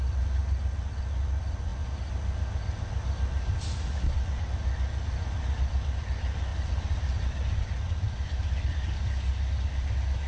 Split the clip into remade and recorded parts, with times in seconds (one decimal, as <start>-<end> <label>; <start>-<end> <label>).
0.0-10.3 recorded